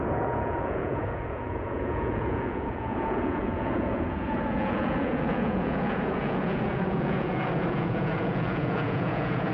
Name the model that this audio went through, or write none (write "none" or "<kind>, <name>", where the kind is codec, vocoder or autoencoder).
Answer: vocoder, Vocos